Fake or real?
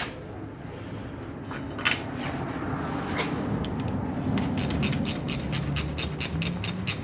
real